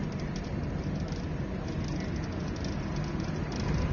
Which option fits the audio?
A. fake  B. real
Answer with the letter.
B